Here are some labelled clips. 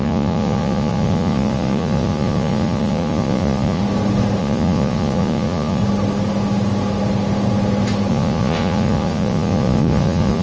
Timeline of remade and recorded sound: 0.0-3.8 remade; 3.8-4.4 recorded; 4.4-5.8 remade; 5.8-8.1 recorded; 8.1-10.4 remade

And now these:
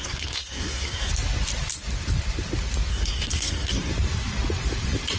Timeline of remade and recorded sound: 0.0-1.1 remade; 1.1-2.9 recorded; 2.9-3.9 remade; 3.9-5.2 recorded

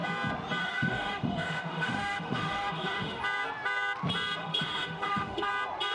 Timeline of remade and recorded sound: 0.0-0.6 recorded; 0.6-3.2 remade; 3.2-4.4 recorded; 4.4-5.5 remade; 5.5-5.9 recorded

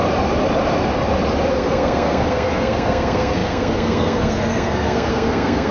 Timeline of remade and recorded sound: 0.0-1.5 recorded; 1.5-5.7 remade